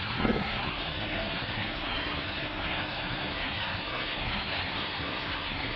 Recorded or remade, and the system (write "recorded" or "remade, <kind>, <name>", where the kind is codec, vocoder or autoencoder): remade, codec, SNAC